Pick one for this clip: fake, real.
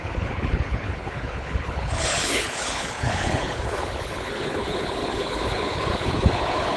fake